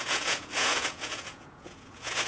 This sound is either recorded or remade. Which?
remade